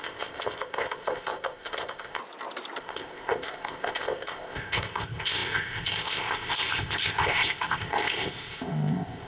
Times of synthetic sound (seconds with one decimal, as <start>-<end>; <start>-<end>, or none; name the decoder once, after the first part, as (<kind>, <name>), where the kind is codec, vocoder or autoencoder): 0.0-2.2 (codec, ZipCodec); 2.8-9.3